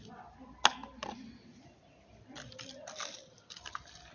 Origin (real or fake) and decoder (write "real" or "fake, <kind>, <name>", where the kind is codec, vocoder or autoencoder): real